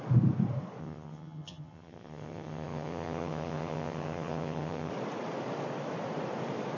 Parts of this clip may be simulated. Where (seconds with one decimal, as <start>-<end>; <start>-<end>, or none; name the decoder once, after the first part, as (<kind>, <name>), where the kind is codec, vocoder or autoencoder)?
0.8-4.9 (vocoder, HiFi-GAN)